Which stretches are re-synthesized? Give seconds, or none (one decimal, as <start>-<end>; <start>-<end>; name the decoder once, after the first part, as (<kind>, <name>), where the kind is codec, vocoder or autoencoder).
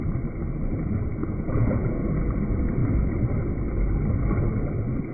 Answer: 1.2-2.1 (vocoder, Vocos)